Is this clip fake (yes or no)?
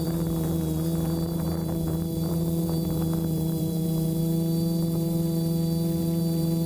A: yes